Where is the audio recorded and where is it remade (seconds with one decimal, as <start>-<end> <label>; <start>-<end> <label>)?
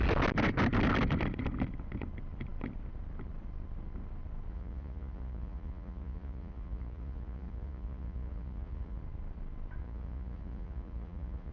0.0-4.5 recorded; 4.5-9.0 remade; 9.0-9.8 recorded; 9.8-11.5 remade